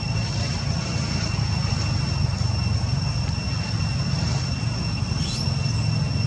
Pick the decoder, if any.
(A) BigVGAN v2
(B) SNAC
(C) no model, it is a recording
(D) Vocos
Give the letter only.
C